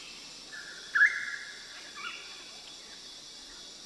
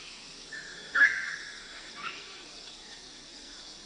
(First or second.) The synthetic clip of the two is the second